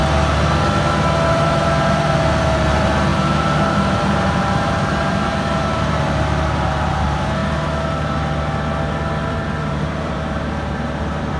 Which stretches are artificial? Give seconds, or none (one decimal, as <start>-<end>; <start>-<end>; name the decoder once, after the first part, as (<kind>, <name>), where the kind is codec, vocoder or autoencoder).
1.3-7.4 (vocoder, BigVGAN v2); 9.7-11.4